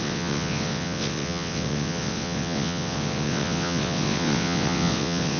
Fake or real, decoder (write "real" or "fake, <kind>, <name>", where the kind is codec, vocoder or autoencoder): fake, vocoder, WaveNeXt